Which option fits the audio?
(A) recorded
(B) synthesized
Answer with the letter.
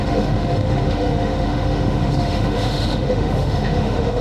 B